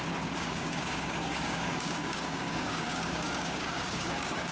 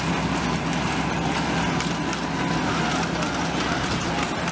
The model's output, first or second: first